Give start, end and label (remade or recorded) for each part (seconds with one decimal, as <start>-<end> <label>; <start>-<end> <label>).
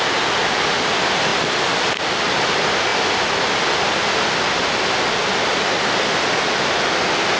0.0-7.4 recorded